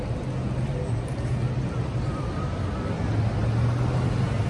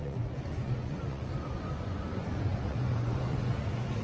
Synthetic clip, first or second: second